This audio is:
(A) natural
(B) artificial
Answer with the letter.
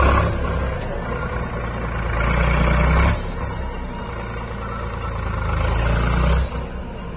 A